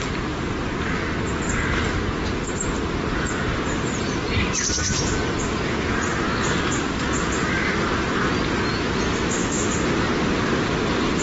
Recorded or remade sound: recorded